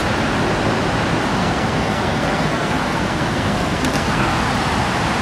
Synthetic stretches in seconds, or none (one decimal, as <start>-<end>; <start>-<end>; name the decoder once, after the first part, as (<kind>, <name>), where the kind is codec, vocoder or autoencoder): 1.4-4.5 (codec, SNAC)